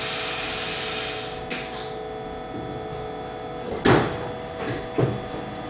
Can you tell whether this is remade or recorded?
recorded